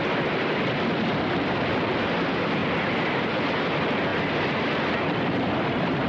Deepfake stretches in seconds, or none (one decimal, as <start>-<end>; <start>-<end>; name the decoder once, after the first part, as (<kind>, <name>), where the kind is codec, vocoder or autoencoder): none